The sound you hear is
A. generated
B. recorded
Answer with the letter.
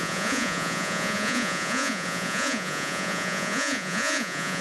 A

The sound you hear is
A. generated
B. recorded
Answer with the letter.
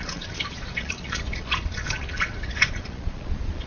A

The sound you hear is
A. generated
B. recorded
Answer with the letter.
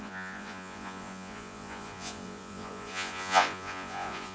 A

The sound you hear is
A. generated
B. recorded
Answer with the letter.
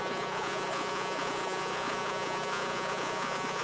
A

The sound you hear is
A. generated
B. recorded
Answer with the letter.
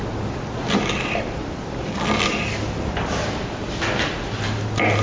B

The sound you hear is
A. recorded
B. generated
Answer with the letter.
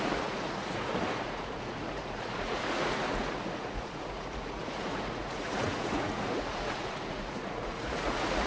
B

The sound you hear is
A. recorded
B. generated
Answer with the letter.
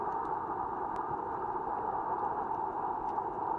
A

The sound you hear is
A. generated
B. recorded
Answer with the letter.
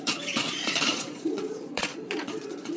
A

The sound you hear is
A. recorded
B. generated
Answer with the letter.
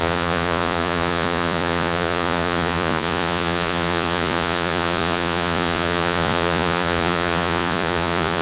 B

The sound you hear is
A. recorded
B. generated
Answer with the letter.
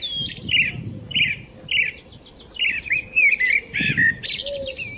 A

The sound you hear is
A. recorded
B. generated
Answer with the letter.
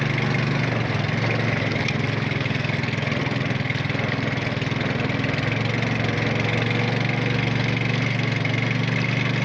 A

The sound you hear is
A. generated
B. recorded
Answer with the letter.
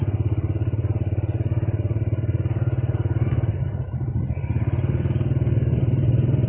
B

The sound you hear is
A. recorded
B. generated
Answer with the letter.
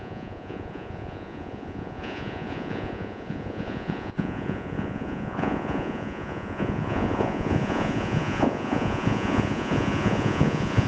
B